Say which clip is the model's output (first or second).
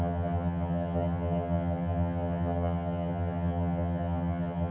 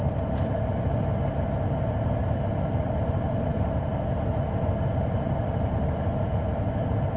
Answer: first